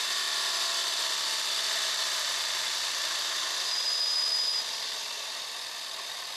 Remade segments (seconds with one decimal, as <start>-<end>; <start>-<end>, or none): none